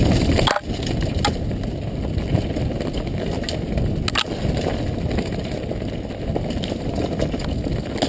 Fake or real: real